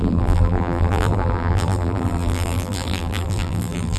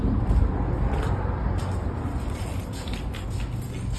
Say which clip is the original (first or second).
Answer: second